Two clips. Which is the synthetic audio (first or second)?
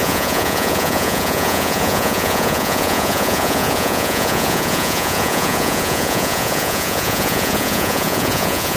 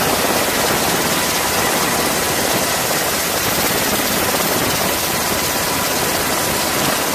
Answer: first